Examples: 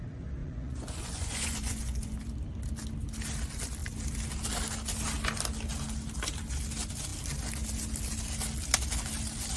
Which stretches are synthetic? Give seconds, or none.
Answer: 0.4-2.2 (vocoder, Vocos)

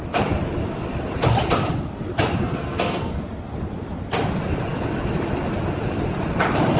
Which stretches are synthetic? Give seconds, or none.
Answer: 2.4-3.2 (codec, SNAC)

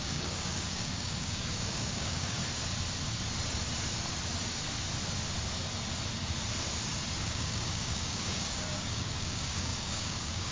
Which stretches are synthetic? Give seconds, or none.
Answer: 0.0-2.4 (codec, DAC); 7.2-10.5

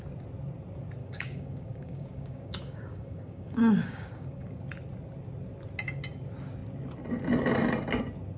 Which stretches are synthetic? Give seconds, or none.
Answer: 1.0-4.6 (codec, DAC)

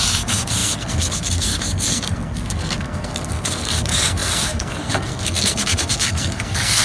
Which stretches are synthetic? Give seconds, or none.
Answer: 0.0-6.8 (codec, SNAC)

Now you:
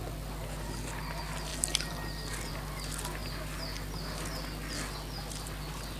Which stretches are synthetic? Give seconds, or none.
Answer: 1.5-2.5 (vocoder, BigVGAN v2)